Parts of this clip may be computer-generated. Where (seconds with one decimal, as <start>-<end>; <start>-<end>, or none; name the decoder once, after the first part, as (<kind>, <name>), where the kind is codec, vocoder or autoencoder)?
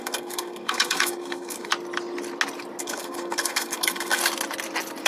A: 0.0-1.7 (codec, SNAC); 2.8-4.2